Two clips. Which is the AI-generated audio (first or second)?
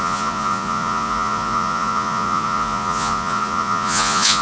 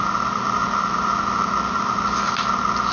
first